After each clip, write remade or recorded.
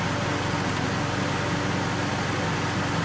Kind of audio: recorded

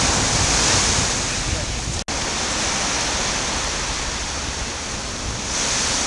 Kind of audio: recorded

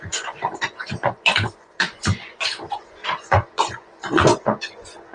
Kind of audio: remade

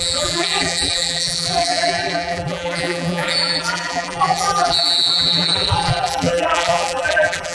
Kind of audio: remade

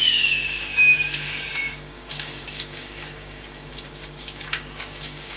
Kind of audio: remade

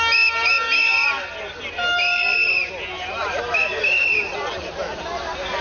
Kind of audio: recorded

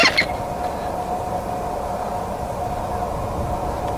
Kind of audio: recorded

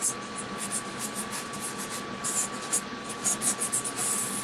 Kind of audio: recorded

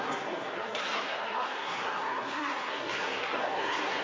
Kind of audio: remade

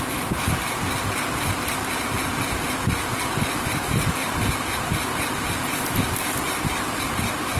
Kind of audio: remade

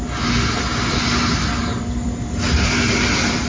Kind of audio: recorded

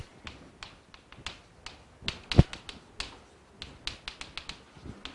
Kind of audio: recorded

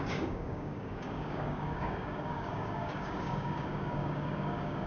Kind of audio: remade